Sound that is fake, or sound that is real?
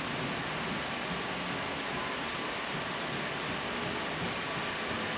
real